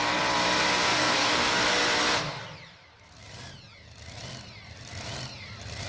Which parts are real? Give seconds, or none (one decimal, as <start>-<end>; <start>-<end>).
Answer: 0.0-0.9; 1.8-5.9